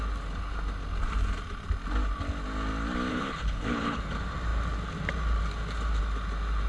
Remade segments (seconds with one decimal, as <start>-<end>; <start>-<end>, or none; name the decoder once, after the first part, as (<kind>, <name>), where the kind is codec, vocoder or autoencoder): 3.1-4.0 (codec, HILCodec)